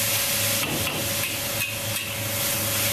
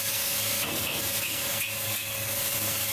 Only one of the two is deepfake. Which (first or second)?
second